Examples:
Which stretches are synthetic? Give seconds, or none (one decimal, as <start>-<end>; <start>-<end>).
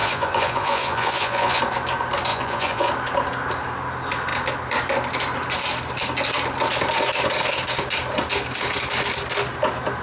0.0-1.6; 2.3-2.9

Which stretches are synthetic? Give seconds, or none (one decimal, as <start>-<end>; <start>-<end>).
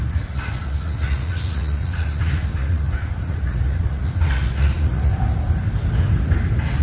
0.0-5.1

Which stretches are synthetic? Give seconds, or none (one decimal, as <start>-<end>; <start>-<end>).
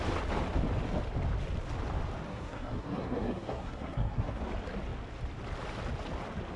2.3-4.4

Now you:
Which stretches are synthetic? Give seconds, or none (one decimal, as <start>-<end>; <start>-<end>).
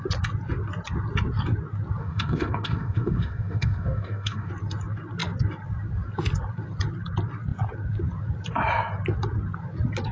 2.0-4.5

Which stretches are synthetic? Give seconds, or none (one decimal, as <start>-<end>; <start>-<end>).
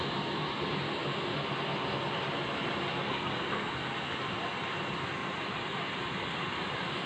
2.9-3.7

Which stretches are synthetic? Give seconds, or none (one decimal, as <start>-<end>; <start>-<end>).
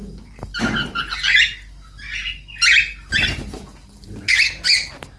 none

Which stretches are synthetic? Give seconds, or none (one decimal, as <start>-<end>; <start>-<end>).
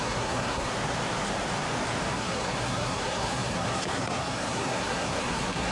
0.0-0.7; 2.1-5.7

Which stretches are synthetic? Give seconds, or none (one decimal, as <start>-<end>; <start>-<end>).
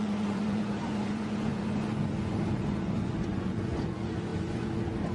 0.0-5.1